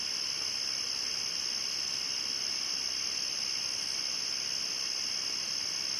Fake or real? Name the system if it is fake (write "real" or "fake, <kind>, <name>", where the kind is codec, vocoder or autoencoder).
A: real